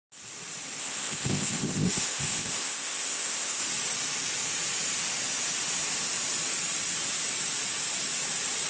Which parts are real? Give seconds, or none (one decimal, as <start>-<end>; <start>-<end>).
0.0-0.8; 3.6-8.7